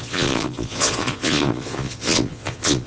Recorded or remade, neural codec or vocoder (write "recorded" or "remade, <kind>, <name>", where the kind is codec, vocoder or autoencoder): remade, vocoder, Vocos